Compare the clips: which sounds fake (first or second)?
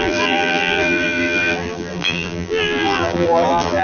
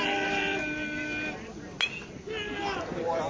first